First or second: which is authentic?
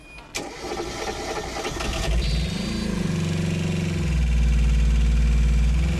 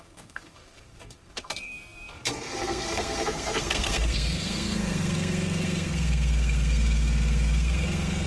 first